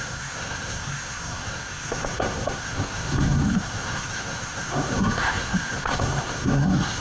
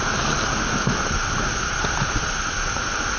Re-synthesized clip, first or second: first